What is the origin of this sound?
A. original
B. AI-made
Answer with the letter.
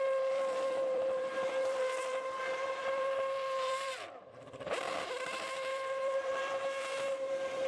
B